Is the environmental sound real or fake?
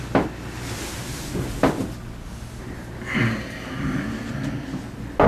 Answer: real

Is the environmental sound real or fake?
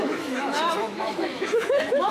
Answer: fake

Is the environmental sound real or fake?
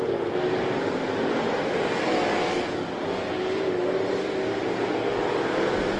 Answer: real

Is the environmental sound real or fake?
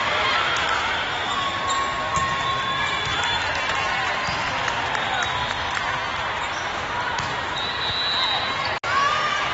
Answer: real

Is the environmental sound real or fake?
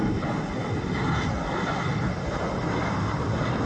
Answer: real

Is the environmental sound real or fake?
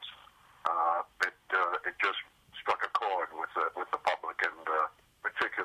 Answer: real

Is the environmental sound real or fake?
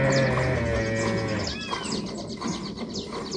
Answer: real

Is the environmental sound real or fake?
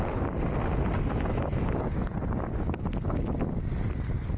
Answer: real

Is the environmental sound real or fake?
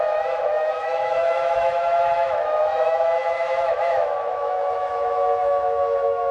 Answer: fake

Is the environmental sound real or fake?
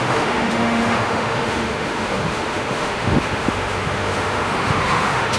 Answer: fake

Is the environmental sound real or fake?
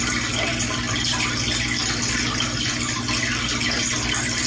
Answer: real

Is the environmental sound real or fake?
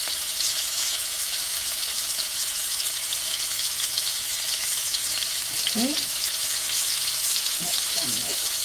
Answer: fake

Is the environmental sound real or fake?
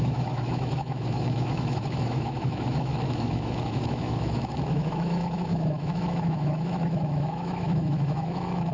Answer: fake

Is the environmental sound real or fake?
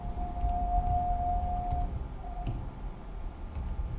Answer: real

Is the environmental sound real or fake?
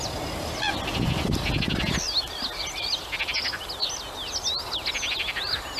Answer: real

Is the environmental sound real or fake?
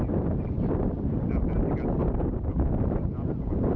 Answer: real